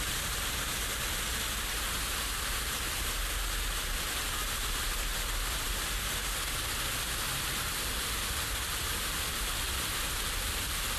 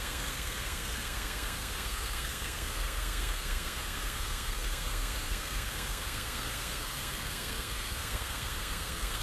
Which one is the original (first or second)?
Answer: first